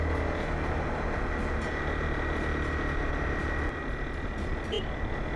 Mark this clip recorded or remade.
recorded